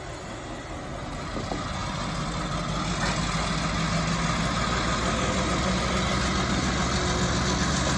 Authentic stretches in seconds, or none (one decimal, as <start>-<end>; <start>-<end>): 0.0-8.0